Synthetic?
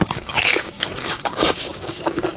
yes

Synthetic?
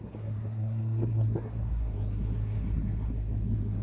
yes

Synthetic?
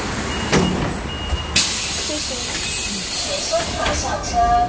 no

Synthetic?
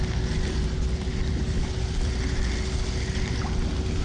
no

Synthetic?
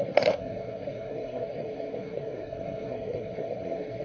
yes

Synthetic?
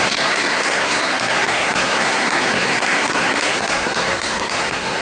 yes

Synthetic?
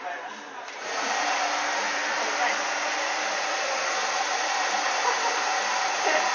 yes